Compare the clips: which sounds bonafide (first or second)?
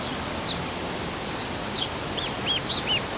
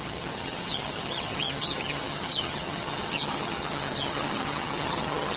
first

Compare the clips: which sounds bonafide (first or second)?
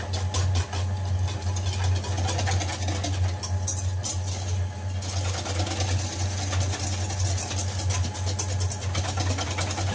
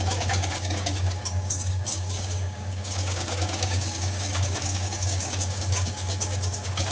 first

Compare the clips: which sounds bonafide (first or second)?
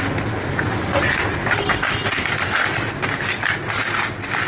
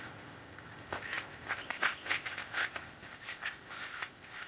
first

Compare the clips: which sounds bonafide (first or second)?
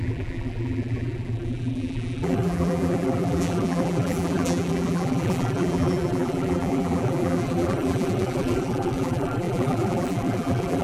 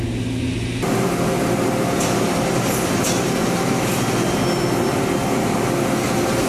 second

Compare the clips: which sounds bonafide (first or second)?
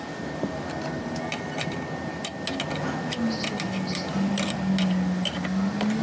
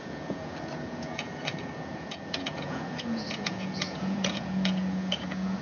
first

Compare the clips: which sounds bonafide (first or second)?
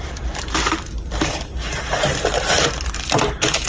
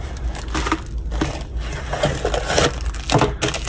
second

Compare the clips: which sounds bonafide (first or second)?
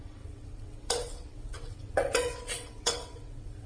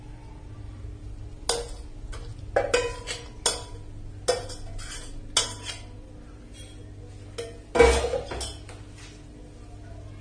second